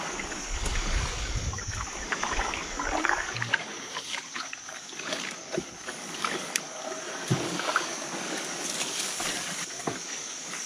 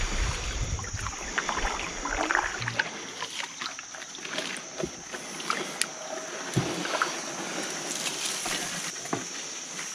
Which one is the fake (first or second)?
first